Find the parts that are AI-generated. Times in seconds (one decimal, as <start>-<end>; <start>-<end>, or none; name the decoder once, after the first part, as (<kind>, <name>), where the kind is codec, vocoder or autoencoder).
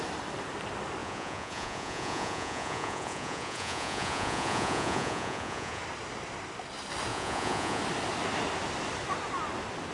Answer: 1.0-5.8 (vocoder, Vocos); 7.1-7.8